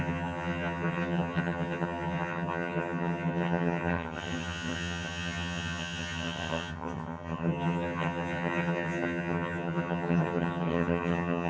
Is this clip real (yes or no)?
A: no